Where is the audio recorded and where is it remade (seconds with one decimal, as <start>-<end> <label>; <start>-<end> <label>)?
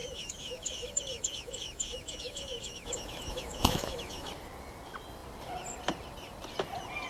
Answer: 0.0-4.3 remade; 4.3-7.1 recorded